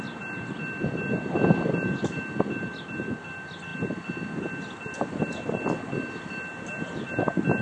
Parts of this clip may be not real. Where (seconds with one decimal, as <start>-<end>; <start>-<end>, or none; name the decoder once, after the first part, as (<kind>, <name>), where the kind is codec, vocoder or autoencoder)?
none